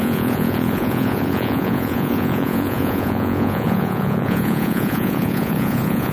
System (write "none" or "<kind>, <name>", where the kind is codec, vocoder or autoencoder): vocoder, Vocos